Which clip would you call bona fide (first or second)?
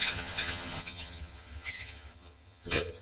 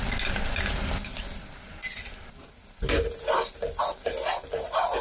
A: second